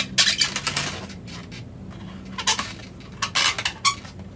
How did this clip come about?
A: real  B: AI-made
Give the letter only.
A